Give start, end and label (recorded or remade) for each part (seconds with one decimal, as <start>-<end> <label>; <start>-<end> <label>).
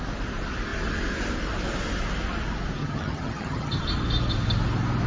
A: 0.0-2.8 recorded; 2.8-3.8 remade; 3.8-5.1 recorded